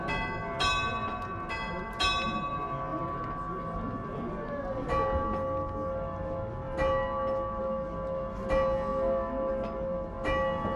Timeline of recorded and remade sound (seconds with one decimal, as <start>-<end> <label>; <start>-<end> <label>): 0.0-10.8 recorded